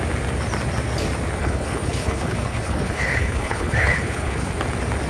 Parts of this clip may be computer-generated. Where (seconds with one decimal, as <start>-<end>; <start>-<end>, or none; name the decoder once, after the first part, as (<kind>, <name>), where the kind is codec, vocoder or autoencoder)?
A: 1.4-4.5 (codec, HILCodec)

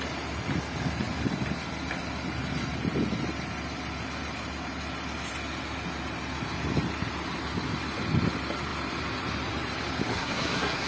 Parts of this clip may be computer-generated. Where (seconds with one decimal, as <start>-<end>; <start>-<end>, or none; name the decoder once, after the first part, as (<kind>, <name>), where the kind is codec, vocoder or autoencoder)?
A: 10.1-10.9 (codec, SNAC)